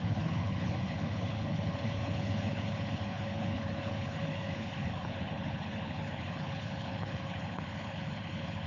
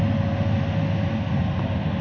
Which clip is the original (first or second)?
second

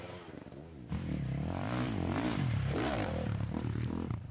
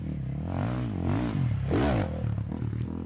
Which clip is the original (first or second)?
second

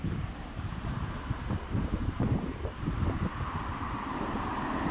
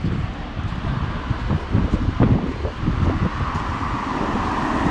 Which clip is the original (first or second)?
second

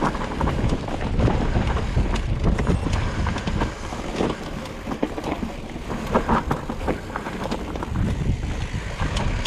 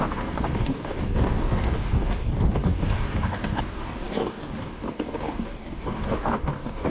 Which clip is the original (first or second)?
first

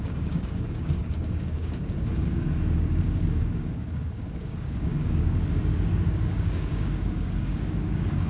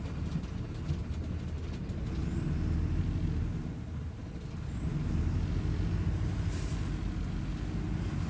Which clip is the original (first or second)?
second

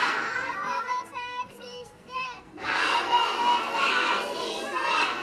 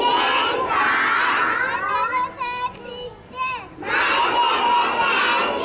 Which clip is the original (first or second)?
second